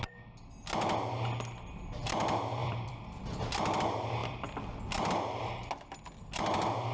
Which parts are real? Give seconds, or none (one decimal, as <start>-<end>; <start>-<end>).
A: 0.0-2.6; 3.8-4.2; 5.1-6.9